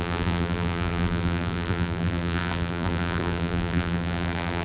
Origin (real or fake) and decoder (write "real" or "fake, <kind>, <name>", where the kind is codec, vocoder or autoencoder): fake, vocoder, BigVGAN v2